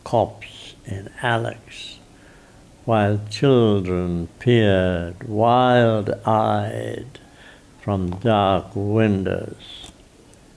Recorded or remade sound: recorded